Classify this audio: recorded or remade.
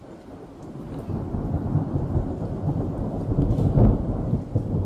recorded